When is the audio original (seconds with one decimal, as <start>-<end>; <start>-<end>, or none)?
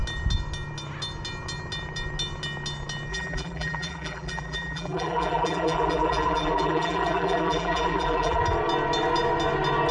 0.0-3.1; 8.4-9.9